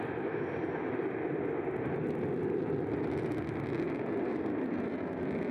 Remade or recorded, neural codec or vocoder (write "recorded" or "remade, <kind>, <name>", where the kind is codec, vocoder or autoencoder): recorded